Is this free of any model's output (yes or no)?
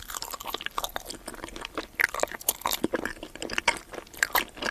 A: yes